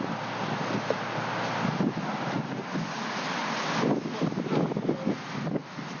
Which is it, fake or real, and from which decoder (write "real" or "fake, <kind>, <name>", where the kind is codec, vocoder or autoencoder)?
real